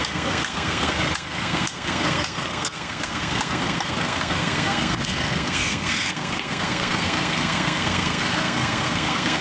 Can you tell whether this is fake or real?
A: fake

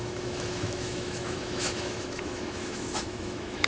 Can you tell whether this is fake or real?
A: fake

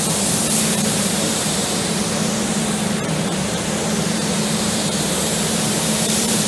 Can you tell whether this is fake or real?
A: fake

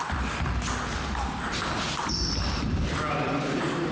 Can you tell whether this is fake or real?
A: real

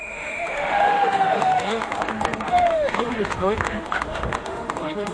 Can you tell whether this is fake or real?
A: fake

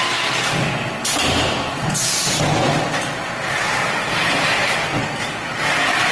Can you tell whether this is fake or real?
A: real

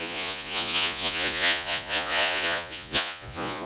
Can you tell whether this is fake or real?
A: fake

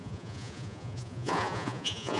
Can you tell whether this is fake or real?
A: fake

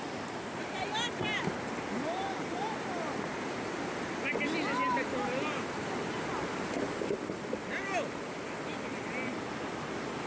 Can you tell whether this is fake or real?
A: real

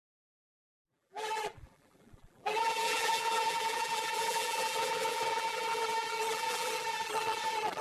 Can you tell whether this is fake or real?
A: fake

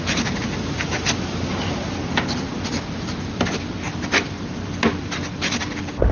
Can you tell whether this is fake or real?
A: real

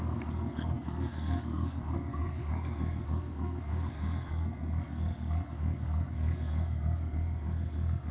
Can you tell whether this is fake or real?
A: fake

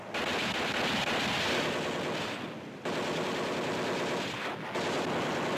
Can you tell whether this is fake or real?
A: real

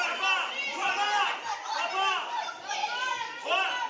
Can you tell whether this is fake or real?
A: real